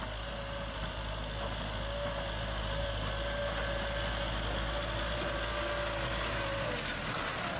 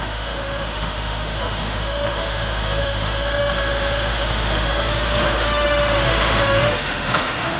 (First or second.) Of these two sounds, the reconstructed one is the second